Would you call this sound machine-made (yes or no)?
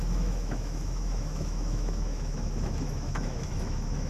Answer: yes